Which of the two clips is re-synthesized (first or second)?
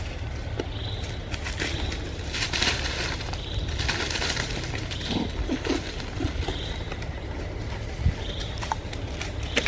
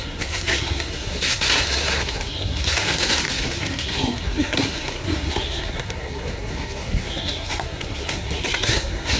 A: second